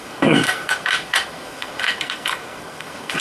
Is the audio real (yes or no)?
no